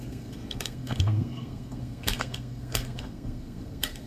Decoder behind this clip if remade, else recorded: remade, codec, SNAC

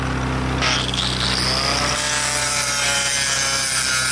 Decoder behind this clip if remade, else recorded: recorded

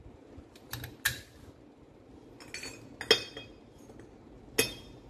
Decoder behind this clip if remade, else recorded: recorded